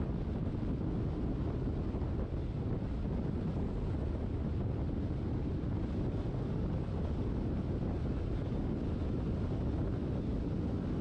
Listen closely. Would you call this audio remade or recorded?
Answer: recorded